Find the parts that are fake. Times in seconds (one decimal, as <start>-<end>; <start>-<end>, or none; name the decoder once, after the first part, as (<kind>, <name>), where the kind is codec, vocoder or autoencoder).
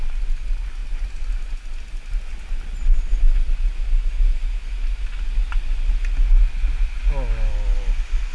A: none